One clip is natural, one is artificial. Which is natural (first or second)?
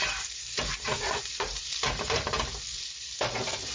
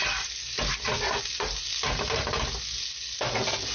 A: second